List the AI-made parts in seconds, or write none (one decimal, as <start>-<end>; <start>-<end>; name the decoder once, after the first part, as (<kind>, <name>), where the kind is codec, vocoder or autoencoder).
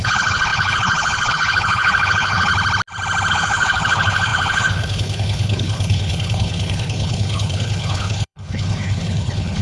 0.0-2.5 (codec, HILCodec); 3.3-9.6